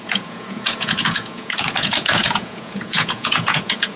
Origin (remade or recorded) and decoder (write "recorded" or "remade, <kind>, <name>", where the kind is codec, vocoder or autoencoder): remade, vocoder, Vocos